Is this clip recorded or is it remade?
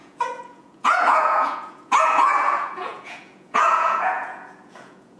remade